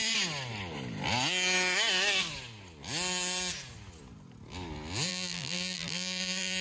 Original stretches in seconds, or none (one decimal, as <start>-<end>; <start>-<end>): 0.0-5.1